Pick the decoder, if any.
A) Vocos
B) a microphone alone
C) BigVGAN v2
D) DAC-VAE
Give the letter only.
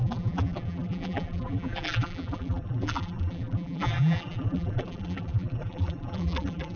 C